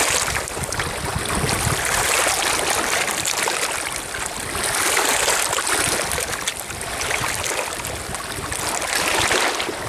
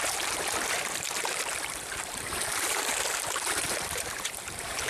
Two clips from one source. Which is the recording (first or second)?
first